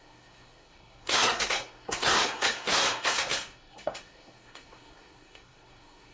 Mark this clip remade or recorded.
remade